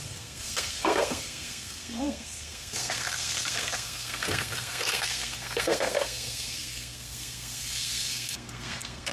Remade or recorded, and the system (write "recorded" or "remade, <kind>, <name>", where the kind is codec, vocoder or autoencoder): remade, codec, SNAC